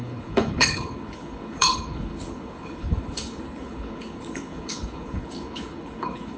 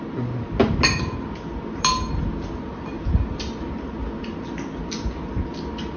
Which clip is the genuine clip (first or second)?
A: second